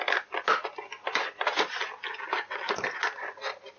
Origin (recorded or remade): recorded